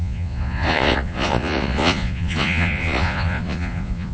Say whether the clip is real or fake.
fake